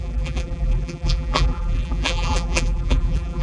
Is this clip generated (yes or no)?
yes